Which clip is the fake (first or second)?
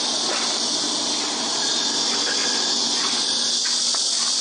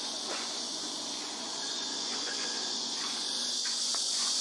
second